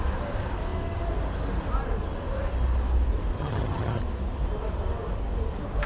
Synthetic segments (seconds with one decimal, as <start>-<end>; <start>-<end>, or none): 3.4-4.0

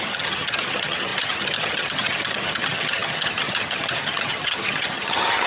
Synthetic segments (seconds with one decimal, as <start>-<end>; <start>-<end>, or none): 0.0-5.5

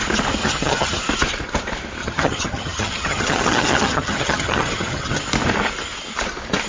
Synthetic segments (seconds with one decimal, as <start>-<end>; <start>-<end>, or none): 0.4-1.0; 2.0-5.2

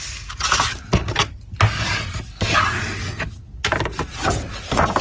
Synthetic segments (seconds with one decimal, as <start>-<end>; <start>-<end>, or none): none